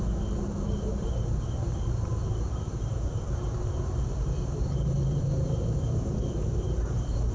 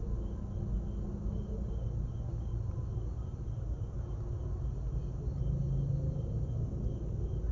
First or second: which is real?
second